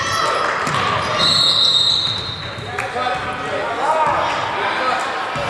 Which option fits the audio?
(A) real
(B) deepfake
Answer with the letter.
A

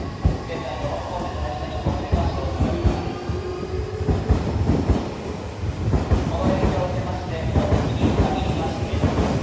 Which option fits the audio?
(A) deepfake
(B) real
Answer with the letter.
B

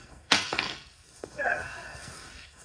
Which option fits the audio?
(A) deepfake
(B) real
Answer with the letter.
A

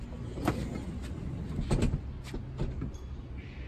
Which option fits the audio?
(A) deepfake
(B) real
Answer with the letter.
B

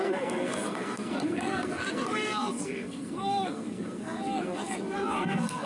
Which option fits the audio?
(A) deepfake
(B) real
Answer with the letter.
A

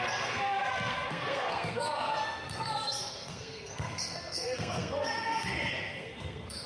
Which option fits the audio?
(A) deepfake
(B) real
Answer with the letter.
A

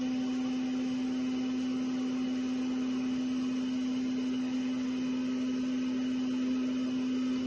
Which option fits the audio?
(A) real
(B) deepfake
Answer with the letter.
A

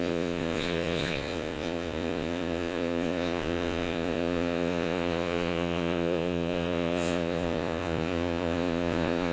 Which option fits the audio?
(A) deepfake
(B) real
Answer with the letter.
A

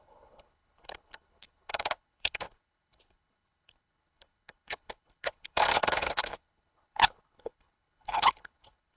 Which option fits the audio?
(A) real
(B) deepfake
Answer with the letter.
B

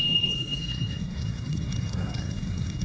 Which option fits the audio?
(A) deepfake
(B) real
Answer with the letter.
A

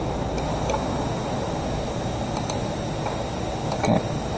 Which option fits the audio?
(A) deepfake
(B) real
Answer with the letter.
B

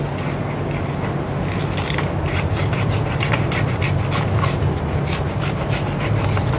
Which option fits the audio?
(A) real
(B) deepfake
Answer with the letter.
A